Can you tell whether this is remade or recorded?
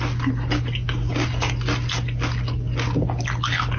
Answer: recorded